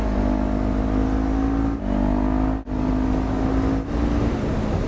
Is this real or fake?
real